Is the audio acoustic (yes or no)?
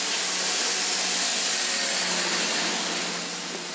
yes